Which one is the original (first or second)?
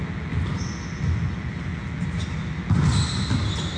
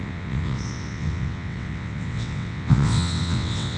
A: first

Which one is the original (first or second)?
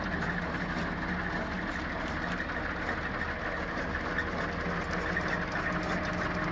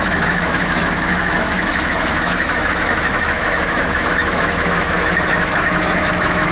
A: first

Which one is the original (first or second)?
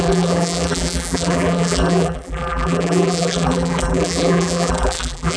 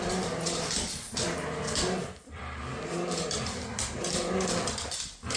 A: second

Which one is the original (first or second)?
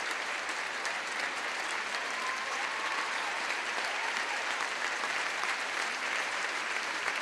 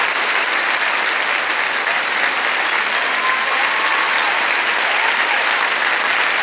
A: second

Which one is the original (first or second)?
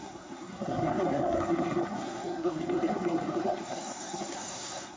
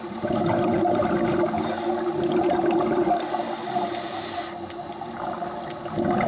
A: second